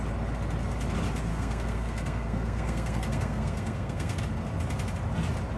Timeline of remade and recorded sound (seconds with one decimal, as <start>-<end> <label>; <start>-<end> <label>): 0.0-1.3 recorded; 1.3-4.2 remade; 4.2-5.6 recorded